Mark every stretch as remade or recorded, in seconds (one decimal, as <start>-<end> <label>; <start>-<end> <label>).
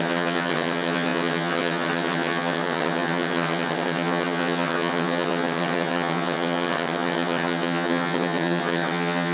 0.0-9.3 remade